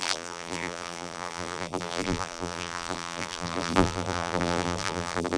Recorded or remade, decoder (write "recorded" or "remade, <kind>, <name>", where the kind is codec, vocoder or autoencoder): remade, vocoder, BigVGAN v2